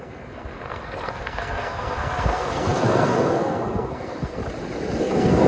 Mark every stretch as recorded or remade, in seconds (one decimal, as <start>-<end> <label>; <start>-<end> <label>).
0.0-4.4 remade; 4.4-5.0 recorded; 5.0-5.5 remade